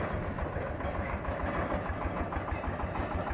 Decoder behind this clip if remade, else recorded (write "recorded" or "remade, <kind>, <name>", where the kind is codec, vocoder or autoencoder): recorded